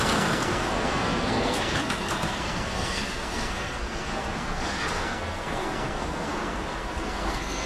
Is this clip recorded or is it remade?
remade